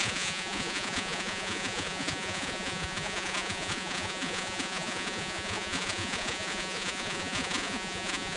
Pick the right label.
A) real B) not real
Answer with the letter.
B